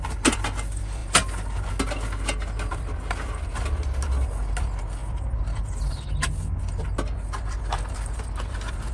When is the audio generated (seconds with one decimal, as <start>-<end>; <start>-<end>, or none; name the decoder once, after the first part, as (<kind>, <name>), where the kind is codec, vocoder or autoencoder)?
none